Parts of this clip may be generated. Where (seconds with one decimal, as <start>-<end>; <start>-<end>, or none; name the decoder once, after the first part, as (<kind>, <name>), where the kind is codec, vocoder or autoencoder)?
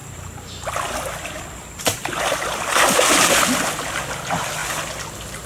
0.0-3.3 (vocoder, BigVGAN v2); 4.6-5.5